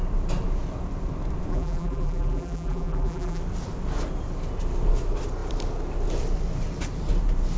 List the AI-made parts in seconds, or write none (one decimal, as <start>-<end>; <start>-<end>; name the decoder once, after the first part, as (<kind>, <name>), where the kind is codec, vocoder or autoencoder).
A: 1.5-3.4 (vocoder, BigVGAN v2)